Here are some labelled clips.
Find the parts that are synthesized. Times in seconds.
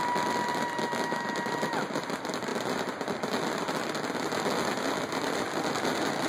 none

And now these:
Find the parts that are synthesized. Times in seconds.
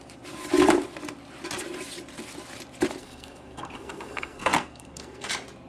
3.0-5.3 (codec, SNAC)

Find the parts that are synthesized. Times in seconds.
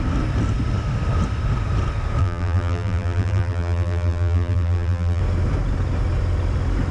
2.2-5.2 (vocoder, BigVGAN v2)